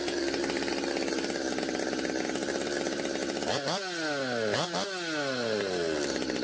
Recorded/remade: recorded